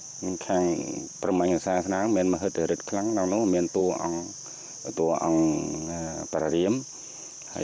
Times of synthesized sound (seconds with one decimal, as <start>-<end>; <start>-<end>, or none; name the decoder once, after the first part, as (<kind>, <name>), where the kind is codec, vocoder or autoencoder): none